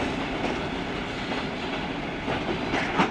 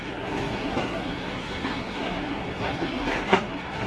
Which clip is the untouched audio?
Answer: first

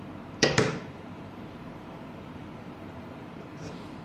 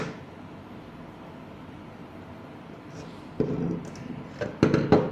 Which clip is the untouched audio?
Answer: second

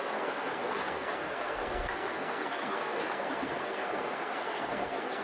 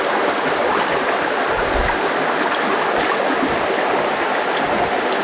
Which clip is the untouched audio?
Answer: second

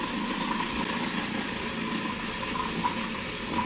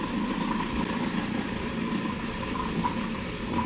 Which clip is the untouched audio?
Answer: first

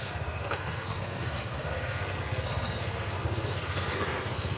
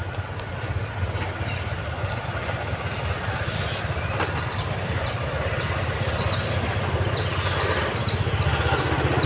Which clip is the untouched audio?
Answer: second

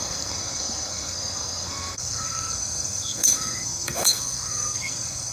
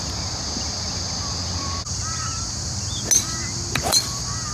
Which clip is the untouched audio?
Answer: second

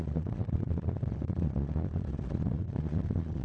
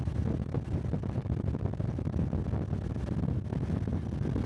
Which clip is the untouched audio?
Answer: second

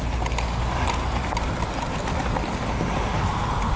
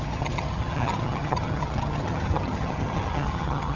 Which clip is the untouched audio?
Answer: first